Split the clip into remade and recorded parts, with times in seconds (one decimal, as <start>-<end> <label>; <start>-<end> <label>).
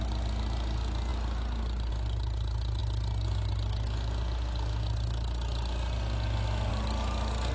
0.0-7.5 recorded